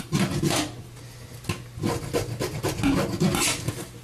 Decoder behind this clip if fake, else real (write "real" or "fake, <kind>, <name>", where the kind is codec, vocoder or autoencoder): real